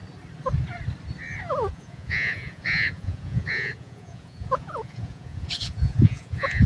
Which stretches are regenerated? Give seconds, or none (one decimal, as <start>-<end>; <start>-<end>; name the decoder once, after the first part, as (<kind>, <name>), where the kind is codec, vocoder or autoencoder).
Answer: 1.7-6.7 (vocoder, Vocos)